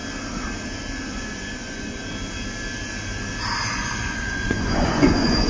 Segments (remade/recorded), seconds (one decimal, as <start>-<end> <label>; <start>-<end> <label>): 0.0-1.1 recorded; 1.1-2.0 remade; 2.0-3.7 recorded; 3.7-5.5 remade